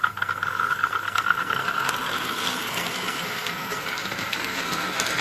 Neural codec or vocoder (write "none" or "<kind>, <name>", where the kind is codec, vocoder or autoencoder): codec, SNAC